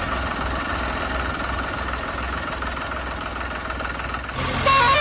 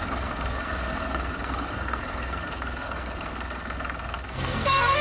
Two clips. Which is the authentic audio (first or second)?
first